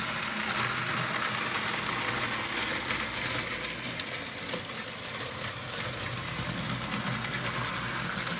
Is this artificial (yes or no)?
no